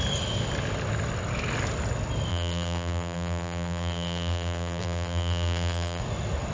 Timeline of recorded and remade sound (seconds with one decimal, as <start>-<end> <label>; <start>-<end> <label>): 0.0-2.3 recorded; 2.3-6.0 remade; 6.0-6.5 recorded